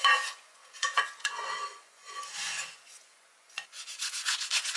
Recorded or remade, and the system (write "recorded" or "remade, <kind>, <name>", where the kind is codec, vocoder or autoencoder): remade, vocoder, Vocos